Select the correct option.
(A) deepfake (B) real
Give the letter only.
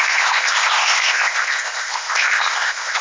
A